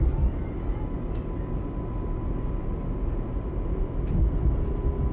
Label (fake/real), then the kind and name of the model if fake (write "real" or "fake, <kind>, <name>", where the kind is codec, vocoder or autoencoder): real